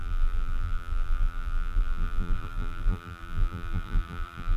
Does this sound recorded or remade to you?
remade